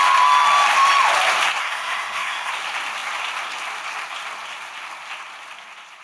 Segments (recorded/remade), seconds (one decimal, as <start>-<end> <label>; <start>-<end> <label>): 0.0-1.6 recorded; 1.6-2.5 remade; 2.5-6.0 recorded